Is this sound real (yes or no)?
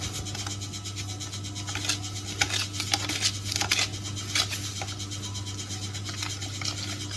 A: yes